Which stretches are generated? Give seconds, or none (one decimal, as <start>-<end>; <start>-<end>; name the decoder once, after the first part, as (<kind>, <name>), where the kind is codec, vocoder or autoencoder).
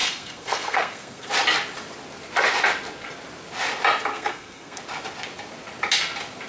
0.0-1.3 (codec, SNAC); 4.1-4.8